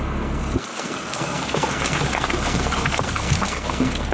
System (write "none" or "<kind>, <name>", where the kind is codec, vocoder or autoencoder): codec, SNAC